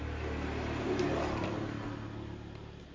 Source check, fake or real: real